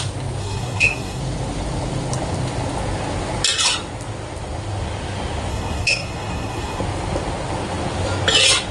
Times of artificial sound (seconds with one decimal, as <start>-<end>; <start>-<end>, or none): 0.4-1.2; 5.5-6.8